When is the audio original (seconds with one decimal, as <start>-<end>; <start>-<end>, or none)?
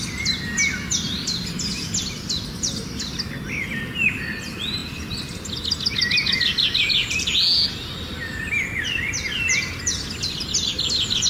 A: 0.0-11.3